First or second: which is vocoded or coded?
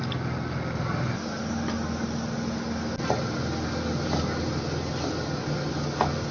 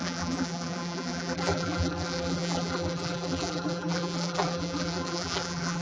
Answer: second